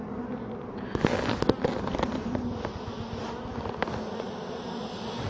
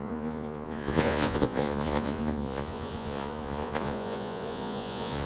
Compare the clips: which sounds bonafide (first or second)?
first